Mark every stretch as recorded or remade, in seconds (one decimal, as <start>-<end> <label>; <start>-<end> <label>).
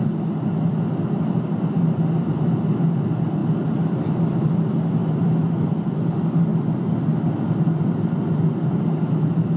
0.0-9.6 recorded